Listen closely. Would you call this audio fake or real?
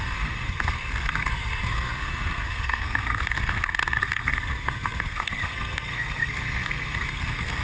fake